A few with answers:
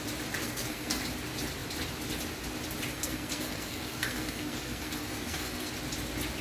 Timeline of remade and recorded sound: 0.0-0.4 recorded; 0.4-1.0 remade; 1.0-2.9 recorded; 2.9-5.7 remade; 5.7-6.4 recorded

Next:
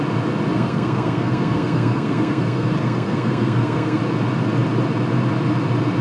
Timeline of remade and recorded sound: 0.0-0.5 recorded; 0.5-4.0 remade; 4.0-6.0 recorded